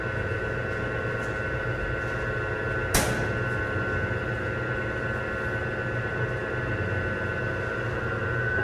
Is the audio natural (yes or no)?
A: yes